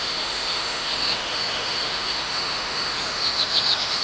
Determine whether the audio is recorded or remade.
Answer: remade